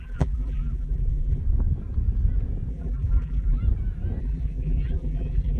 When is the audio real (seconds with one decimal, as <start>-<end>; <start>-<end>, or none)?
1.4-2.7; 3.6-4.2